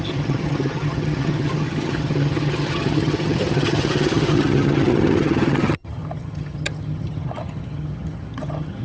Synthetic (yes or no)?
yes